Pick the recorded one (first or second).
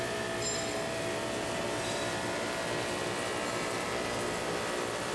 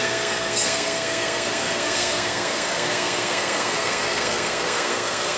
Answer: first